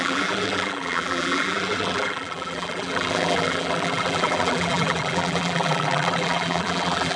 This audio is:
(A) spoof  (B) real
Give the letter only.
A